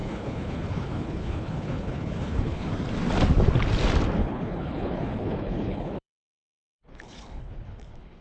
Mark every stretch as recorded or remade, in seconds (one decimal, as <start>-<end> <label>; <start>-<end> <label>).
0.0-2.7 remade; 2.7-4.2 recorded; 4.2-8.2 remade